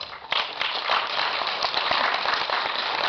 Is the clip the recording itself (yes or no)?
yes